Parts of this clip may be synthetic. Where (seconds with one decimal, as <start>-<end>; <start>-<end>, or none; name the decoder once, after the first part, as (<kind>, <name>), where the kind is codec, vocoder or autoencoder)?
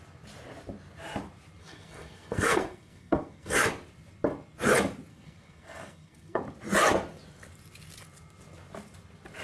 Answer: 1.6-3.7 (codec, SNAC); 5.1-6.4